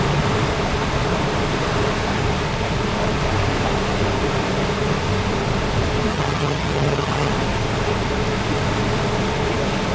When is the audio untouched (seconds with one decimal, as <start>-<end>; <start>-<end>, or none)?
0.0-6.1; 7.3-9.9